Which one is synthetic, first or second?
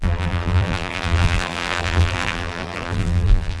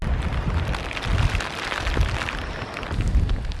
first